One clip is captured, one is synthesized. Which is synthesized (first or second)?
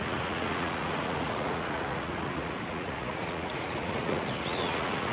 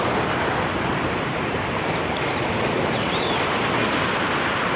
first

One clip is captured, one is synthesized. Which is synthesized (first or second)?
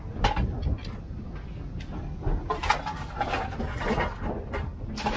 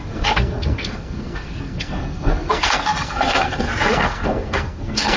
second